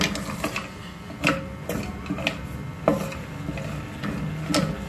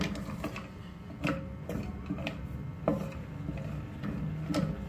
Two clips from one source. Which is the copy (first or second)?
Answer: second